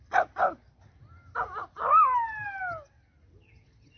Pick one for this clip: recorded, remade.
recorded